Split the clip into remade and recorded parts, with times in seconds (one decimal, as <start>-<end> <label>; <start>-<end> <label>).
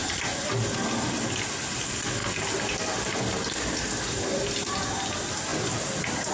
0.0-0.5 remade; 0.5-5.5 recorded; 5.5-6.3 remade